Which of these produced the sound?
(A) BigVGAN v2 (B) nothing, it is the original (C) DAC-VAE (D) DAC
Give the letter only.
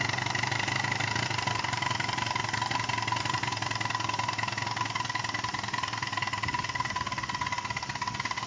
B